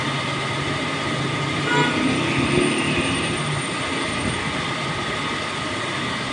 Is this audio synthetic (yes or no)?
no